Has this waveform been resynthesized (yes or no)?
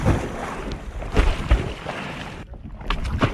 no